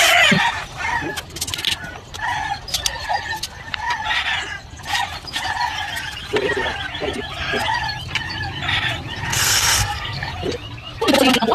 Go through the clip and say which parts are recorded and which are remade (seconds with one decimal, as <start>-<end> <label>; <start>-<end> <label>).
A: 0.0-9.3 recorded; 9.3-10.3 remade; 10.3-11.5 recorded